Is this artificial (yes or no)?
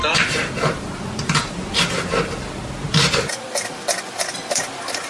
no